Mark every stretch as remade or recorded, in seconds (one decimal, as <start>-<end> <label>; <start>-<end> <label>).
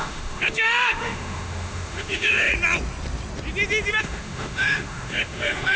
0.0-2.5 remade; 2.5-4.0 recorded; 4.0-5.8 remade